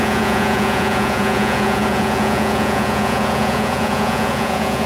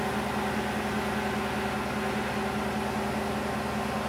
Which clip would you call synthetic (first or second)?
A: first